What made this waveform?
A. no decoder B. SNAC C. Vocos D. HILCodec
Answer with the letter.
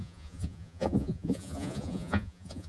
C